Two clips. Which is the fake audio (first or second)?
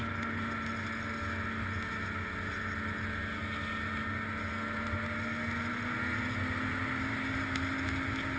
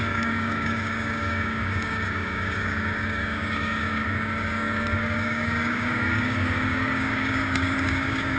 second